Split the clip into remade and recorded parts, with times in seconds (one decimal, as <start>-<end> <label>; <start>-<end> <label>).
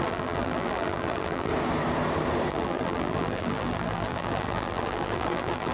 0.0-1.5 remade; 1.5-2.5 recorded; 2.5-5.7 remade